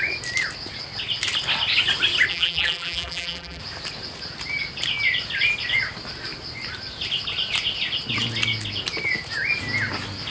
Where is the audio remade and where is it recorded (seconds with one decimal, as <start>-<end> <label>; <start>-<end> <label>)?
0.0-2.3 recorded; 2.3-3.6 remade; 3.6-10.3 recorded